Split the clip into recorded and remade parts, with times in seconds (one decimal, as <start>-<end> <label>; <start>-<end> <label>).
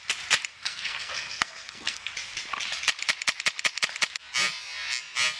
0.0-0.5 recorded; 0.5-2.1 remade; 2.1-5.4 recorded